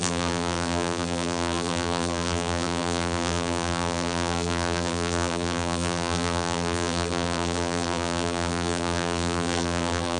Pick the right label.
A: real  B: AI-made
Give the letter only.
B